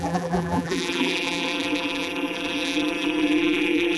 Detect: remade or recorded remade